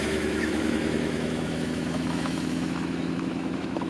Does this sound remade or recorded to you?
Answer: remade